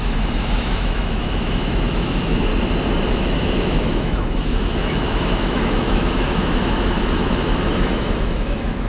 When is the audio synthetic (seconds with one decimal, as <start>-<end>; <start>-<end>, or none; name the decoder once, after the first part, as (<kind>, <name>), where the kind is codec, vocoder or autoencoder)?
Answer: 0.0-2.5 (autoencoder, DAC-VAE); 3.1-8.9